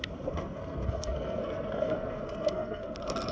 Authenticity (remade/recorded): remade